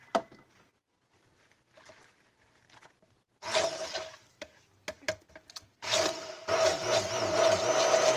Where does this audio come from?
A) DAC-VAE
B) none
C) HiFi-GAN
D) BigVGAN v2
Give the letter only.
B